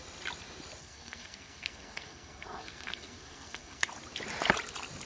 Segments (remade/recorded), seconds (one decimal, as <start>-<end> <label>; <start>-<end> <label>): 0.0-0.8 recorded; 0.8-3.9 remade; 3.9-5.1 recorded